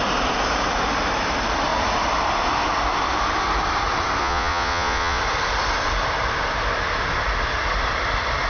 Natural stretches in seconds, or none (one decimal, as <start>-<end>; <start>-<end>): 0.0-4.2; 5.2-8.5